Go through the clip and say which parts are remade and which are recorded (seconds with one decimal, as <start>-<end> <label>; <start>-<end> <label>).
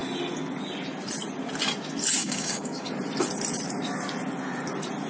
0.0-2.2 recorded; 2.2-2.9 remade; 2.9-5.1 recorded